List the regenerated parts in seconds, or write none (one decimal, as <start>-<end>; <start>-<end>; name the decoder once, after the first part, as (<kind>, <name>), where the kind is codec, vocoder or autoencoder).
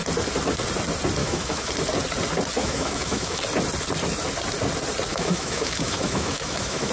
1.2-1.7 (autoencoder, DAC-VAE); 2.6-3.4; 5.1-6.9